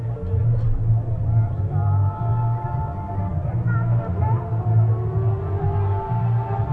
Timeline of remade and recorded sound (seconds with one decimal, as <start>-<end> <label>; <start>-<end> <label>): 0.0-6.7 recorded